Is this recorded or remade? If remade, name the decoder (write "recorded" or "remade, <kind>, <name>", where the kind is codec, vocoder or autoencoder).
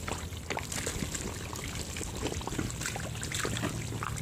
recorded